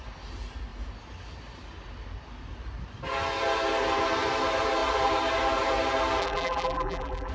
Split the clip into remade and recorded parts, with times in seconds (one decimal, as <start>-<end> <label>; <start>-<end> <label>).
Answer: 0.0-6.2 recorded; 6.2-7.3 remade